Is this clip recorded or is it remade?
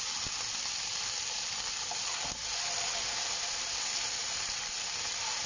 recorded